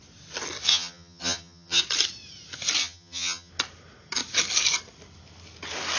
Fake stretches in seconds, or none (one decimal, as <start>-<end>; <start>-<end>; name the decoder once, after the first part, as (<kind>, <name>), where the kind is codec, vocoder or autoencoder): 0.7-1.8 (vocoder, HiFi-GAN); 2.8-3.5